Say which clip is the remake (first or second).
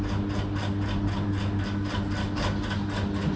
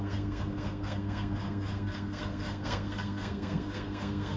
second